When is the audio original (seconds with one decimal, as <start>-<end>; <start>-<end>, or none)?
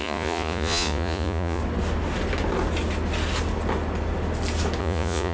1.6-4.8